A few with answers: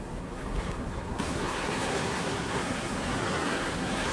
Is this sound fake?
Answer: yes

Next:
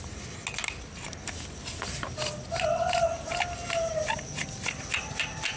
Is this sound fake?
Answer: no